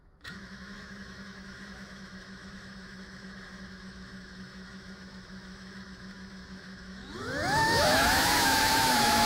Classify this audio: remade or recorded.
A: remade